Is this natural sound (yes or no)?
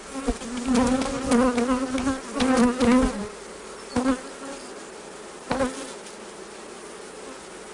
yes